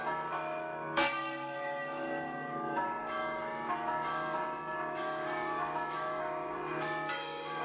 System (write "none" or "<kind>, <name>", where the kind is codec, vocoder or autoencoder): codec, DAC